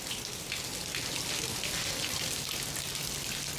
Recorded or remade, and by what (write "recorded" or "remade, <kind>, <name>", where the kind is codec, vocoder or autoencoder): recorded